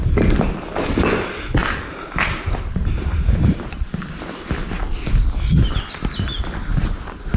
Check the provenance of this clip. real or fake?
real